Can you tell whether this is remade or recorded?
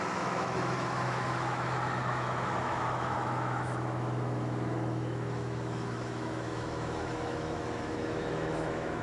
remade